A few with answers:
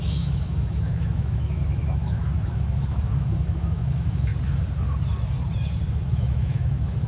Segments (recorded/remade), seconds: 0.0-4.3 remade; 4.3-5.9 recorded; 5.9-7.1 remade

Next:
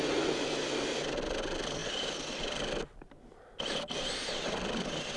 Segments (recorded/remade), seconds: 0.0-5.2 recorded

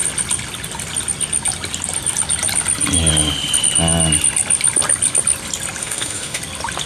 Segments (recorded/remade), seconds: 0.0-5.8 recorded; 5.8-6.4 remade; 6.4-6.9 recorded

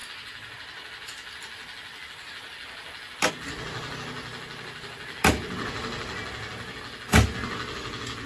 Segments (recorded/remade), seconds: 0.0-8.3 recorded

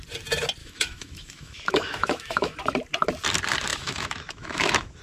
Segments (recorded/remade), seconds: 0.0-0.6 recorded; 0.6-2.6 remade; 2.6-3.7 recorded; 3.7-5.0 remade

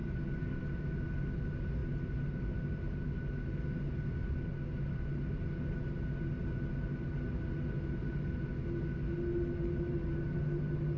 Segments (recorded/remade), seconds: 0.0-11.0 recorded

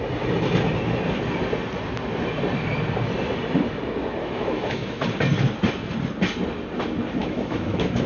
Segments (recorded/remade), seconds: 0.0-4.2 recorded; 4.2-5.0 remade; 5.0-7.2 recorded; 7.2-8.1 remade